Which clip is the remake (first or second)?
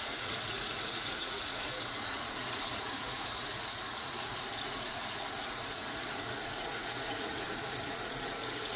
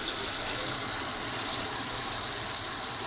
first